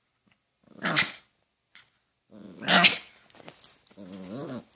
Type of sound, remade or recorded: recorded